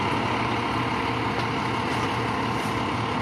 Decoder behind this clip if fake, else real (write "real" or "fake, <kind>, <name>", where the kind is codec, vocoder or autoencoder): real